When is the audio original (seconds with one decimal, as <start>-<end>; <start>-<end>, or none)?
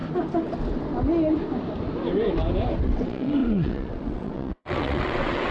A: 0.0-2.8